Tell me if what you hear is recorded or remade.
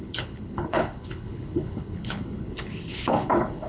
remade